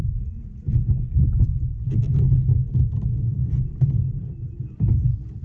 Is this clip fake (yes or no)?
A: no